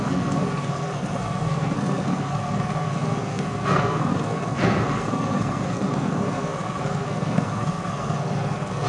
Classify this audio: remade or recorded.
remade